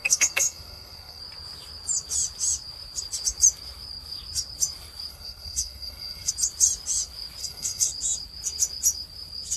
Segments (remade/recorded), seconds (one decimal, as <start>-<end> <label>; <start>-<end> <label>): 0.0-1.2 remade; 1.2-5.1 recorded; 5.1-6.3 remade; 6.3-7.4 recorded; 7.4-7.9 remade; 7.9-9.6 recorded